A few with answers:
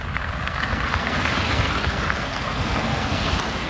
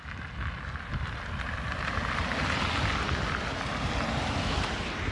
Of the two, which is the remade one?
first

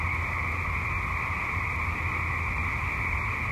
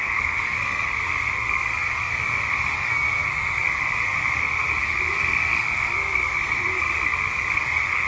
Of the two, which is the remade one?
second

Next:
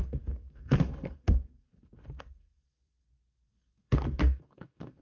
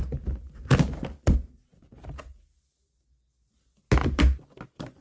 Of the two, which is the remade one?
first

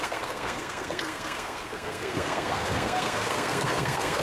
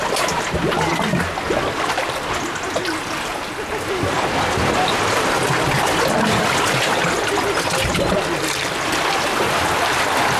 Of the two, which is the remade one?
first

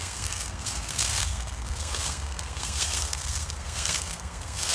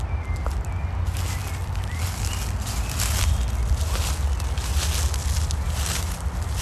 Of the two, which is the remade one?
first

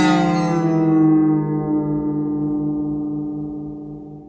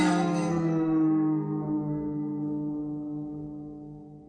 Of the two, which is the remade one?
second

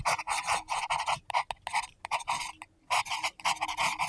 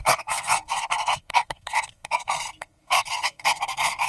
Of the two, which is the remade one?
second